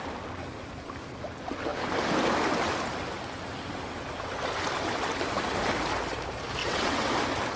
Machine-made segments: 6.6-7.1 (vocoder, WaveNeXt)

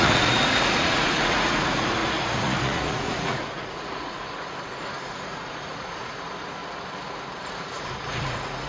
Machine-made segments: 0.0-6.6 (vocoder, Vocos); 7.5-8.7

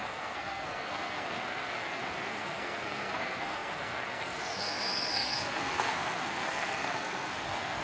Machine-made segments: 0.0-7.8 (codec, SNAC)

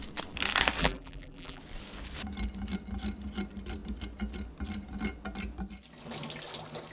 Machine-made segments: 0.8-1.6 (vocoder, BigVGAN v2)

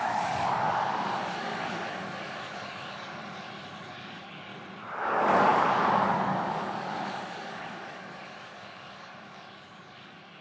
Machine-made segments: 0.0-3.2 (codec, DAC); 3.9-4.5; 5.0-10.4

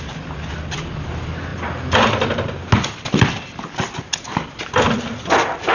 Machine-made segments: none

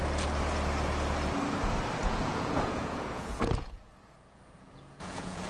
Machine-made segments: 2.0-5.5 (vocoder, Vocos)